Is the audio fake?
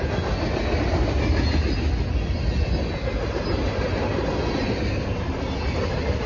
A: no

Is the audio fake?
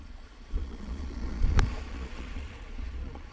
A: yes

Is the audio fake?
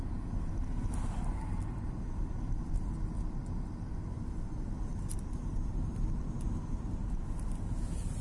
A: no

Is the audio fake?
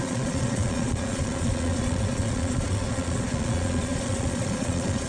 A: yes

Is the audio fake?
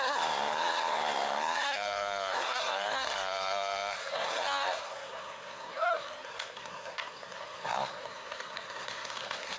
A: yes